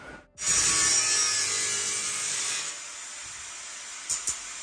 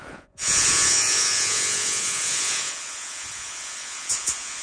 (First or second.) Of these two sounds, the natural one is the first